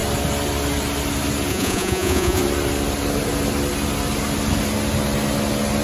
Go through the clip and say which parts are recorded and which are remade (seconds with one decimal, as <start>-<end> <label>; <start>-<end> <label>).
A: 0.0-1.5 recorded; 1.5-2.4 remade; 2.4-5.8 recorded